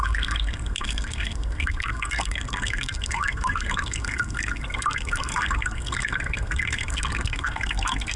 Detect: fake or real fake